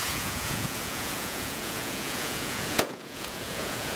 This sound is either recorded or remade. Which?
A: remade